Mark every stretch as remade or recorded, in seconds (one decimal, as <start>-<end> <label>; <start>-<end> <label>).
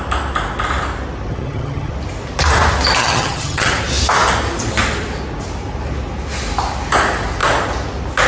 0.0-1.3 recorded; 1.3-1.9 remade; 1.9-3.0 recorded; 3.0-3.7 remade; 3.7-8.3 recorded